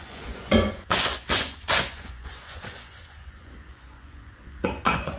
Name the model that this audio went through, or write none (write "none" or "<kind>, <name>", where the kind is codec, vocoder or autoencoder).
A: vocoder, Vocos